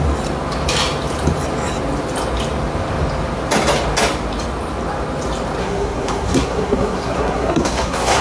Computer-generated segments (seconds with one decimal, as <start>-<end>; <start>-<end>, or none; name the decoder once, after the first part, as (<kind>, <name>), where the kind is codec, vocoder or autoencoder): 5.6-8.2 (codec, SNAC)